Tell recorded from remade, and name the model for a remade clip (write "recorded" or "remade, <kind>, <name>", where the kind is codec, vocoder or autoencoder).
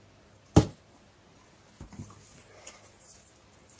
recorded